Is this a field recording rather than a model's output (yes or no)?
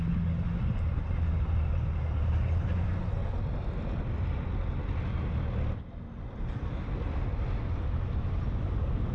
yes